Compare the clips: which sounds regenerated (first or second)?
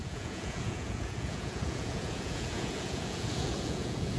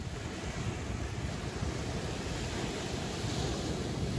first